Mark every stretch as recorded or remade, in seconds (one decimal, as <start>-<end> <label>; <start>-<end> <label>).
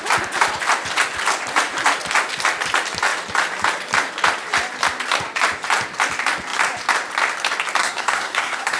0.0-7.8 recorded; 7.8-8.8 remade